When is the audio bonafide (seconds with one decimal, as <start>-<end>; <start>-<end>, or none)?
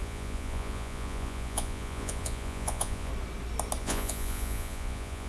3.1-3.8